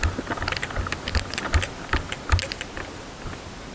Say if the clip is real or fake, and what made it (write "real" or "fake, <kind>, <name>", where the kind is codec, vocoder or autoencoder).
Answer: real